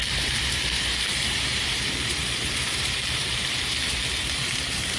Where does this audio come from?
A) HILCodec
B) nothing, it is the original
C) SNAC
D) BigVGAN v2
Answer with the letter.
D